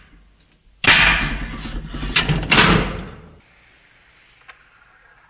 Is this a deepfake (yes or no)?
no